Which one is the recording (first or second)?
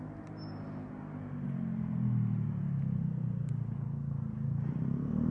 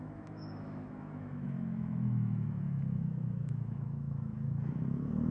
first